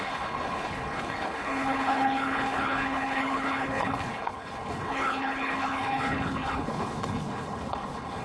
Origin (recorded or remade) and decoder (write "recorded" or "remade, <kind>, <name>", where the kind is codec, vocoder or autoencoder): remade, codec, HILCodec